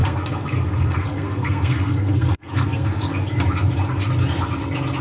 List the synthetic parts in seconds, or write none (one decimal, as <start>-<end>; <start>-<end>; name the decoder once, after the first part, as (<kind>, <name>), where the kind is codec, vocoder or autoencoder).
0.0-3.0 (codec, SNAC)